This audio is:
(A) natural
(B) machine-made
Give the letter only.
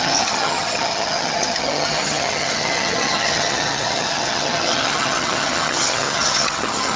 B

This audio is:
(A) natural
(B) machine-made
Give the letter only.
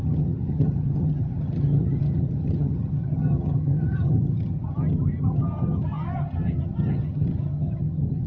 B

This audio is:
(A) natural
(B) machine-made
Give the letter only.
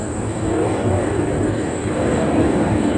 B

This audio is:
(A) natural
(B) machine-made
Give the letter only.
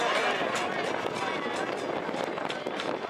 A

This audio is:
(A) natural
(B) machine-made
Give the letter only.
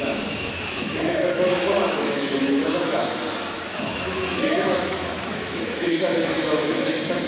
B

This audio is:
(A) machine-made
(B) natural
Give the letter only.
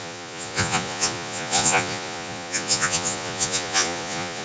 A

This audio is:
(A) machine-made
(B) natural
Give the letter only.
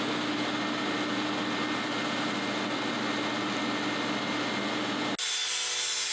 B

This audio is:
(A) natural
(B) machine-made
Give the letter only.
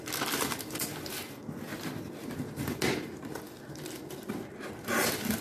A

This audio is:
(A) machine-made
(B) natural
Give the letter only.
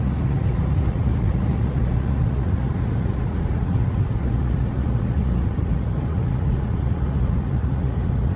A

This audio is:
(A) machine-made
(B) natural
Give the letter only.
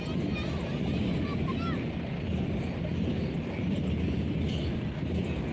B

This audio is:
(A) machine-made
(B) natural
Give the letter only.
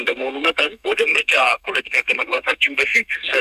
A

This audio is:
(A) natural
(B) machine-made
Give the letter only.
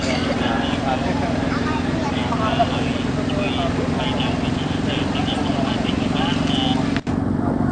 A